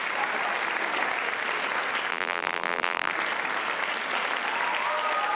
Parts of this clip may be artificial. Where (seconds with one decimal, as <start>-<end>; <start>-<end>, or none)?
2.1-3.1